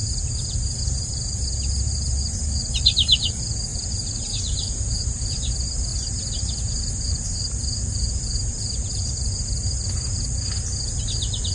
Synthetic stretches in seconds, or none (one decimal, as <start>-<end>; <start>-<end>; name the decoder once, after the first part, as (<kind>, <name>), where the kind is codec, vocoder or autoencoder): 0.0-3.3 (vocoder, BigVGAN v2); 3.7-5.5; 5.9-9.1